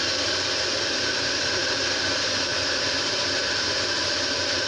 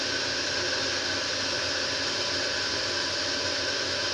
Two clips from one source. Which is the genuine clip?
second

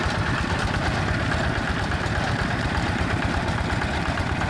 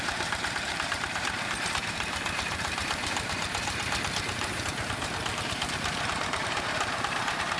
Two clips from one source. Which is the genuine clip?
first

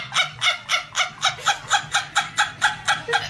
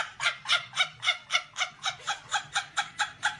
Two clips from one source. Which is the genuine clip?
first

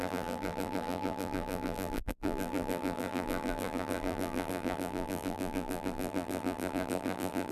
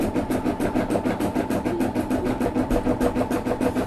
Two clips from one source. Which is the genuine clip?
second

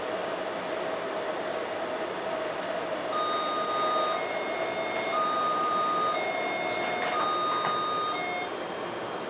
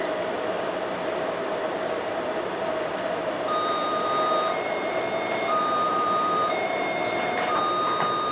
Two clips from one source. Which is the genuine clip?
first